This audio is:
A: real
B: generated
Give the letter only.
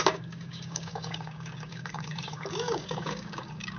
B